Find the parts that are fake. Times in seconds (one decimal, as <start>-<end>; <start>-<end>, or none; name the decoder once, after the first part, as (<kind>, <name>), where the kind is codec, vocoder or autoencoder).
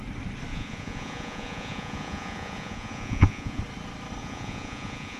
0.5-3.6 (vocoder, Vocos); 4.2-5.2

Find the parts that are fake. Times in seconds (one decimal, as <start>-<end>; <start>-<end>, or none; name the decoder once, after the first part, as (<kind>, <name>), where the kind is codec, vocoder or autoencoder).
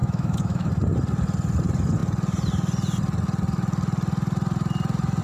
0.0-0.7 (autoencoder, DAC-VAE)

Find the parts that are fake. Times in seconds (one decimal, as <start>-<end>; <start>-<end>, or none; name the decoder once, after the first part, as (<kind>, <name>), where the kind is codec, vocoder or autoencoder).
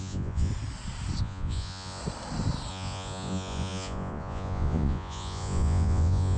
0.0-0.5 (vocoder, Vocos); 1.2-2.0; 2.7-6.4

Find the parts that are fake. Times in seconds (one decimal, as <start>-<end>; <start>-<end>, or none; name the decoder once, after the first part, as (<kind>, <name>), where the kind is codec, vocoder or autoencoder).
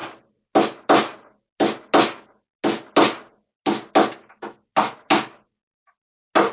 none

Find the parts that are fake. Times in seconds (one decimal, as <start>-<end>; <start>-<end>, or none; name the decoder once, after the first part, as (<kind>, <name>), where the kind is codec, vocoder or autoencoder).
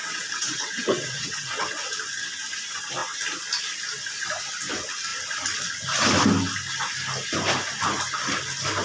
0.0-1.6 (vocoder, WaveNeXt)